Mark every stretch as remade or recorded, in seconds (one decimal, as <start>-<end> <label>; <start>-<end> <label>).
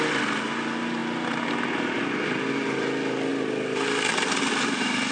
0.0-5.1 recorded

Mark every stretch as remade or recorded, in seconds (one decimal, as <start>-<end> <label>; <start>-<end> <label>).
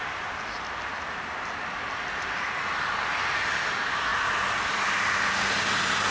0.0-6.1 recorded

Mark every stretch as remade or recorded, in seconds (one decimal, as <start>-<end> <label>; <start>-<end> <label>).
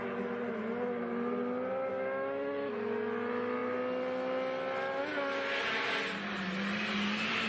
0.0-1.9 recorded; 1.9-2.7 remade; 2.7-7.5 recorded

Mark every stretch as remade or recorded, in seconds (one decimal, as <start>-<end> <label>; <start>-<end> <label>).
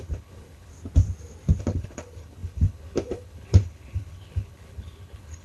0.0-0.7 remade; 0.7-1.6 recorded; 1.6-5.4 remade